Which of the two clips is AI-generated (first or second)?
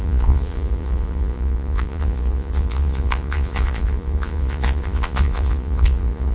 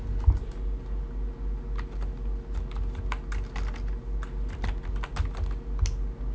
first